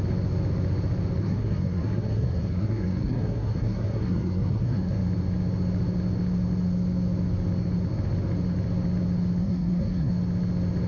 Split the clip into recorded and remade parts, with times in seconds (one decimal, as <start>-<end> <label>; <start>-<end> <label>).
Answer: 0.0-1.2 recorded; 1.2-5.0 remade; 5.0-9.4 recorded; 9.4-10.1 remade; 10.1-10.9 recorded